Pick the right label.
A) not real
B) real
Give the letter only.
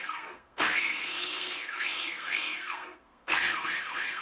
A